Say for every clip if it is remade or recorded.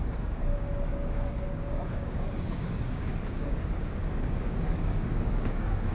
remade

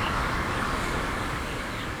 remade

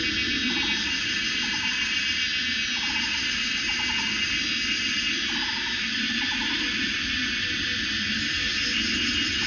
recorded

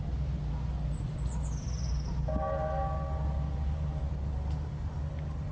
recorded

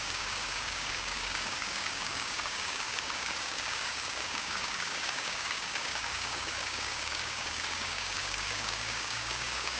remade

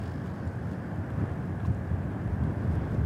recorded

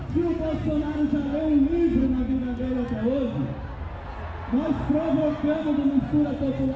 recorded